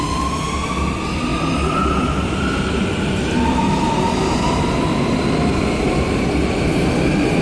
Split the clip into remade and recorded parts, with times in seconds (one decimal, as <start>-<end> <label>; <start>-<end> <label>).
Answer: 0.0-7.4 recorded